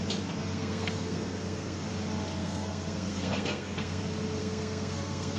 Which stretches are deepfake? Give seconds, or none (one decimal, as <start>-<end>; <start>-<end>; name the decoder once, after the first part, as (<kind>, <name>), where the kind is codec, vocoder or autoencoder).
0.4-1.9 (codec, SNAC); 2.4-4.0; 4.4-5.4